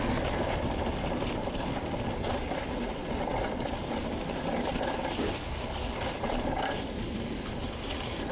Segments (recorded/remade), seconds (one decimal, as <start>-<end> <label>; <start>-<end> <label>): 0.0-8.3 recorded